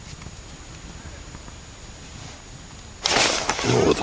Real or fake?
real